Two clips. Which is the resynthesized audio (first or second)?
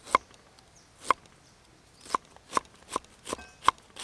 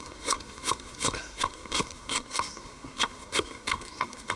second